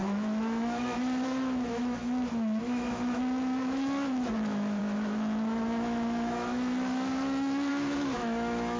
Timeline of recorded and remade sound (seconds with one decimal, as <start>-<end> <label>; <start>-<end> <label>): 0.0-8.8 remade